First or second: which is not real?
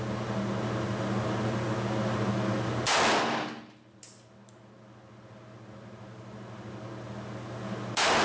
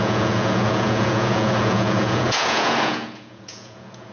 second